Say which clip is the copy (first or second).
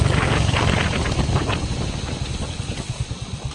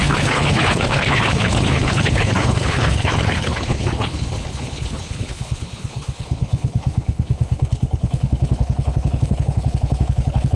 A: second